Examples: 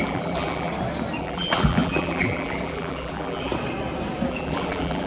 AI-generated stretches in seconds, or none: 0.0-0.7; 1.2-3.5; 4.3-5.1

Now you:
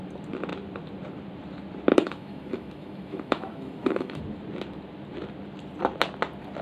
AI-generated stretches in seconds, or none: 1.9-4.2

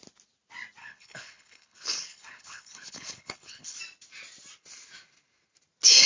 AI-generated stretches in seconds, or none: 0.8-3.8

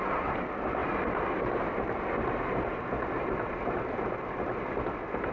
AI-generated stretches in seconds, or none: none

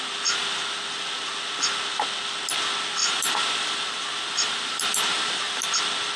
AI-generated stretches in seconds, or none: 3.0-5.8

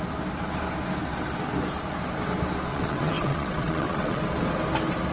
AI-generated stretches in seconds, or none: 2.7-4.2